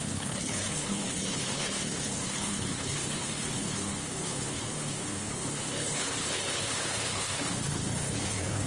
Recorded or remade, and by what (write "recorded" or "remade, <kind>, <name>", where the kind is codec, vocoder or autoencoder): remade, codec, HILCodec